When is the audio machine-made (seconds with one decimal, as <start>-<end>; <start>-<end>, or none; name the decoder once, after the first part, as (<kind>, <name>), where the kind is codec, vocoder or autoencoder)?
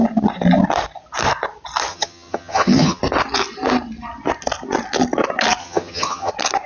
1.9-3.0 (vocoder, HiFi-GAN); 5.6-6.3